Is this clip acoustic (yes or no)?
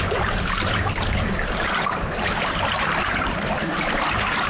no